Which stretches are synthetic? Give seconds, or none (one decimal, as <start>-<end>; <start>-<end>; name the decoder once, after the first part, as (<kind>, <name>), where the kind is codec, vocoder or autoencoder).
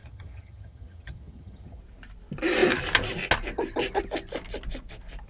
0.0-1.8 (vocoder, HiFi-GAN)